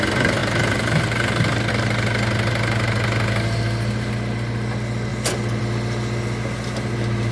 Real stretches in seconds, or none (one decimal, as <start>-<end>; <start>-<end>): 0.0-7.3